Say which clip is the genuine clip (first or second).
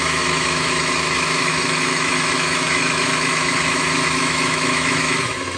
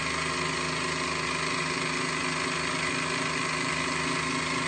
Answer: second